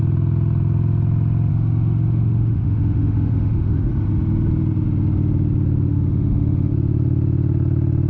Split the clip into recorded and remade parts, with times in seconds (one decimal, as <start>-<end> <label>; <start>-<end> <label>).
0.0-1.5 recorded; 1.5-3.9 remade; 3.9-5.9 recorded; 5.9-6.7 remade; 6.7-8.1 recorded